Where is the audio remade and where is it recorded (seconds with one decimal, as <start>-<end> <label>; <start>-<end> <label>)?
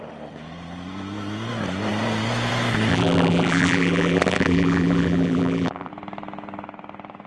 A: 0.0-2.9 recorded; 2.9-5.9 remade; 5.9-7.3 recorded